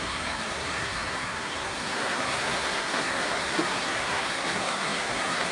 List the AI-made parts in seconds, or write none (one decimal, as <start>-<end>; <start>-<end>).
0.0-5.5